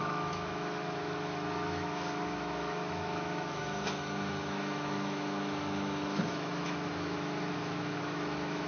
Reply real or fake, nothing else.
fake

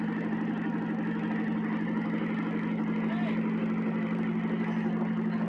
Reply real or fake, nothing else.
real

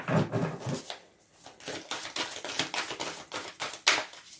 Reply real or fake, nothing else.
real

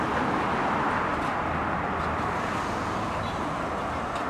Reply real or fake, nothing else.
real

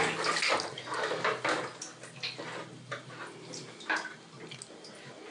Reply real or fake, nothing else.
real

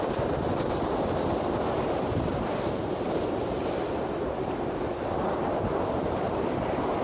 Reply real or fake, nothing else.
real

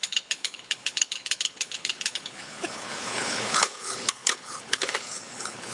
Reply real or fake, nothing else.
fake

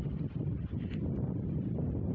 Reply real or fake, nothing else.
real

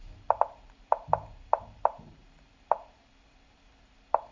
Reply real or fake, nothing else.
fake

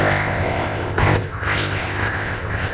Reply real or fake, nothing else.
fake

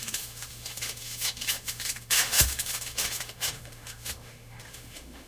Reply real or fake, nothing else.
fake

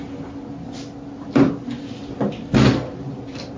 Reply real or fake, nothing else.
real